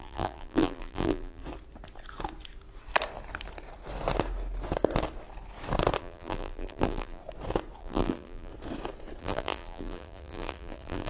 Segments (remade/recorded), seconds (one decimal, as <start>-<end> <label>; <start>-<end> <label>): 0.0-1.4 remade; 1.4-6.0 recorded; 6.0-7.2 remade; 7.2-7.8 recorded; 7.8-8.5 remade; 8.5-9.2 recorded; 9.2-11.1 remade